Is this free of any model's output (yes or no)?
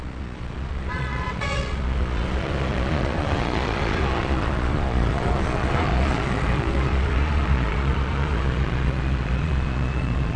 no